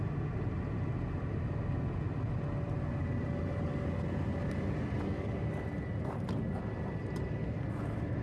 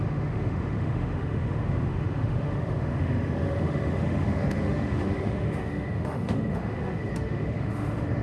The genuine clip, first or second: first